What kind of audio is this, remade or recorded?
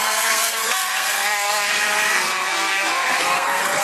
remade